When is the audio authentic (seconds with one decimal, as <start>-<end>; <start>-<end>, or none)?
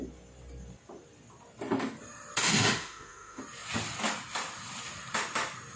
0.0-2.4; 3.4-5.8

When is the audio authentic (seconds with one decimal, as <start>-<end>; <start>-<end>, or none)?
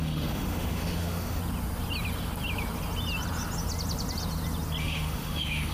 1.4-4.8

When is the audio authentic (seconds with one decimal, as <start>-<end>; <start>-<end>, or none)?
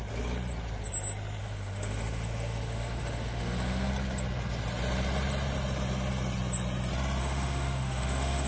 0.0-1.4; 3.9-7.2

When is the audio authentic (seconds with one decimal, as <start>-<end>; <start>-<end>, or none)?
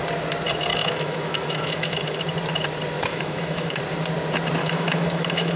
0.0-0.7; 2.2-3.1; 3.8-4.6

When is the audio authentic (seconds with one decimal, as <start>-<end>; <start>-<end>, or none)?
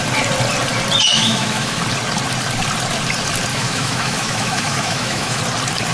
0.0-1.1; 1.8-3.5; 5.4-5.9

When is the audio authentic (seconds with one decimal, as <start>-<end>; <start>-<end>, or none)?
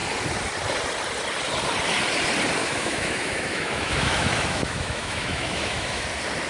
0.0-2.6; 6.0-6.5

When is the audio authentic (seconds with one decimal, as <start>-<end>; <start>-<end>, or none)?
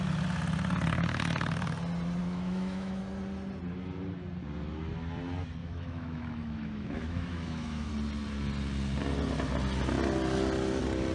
0.0-2.2; 3.0-5.6; 7.9-11.1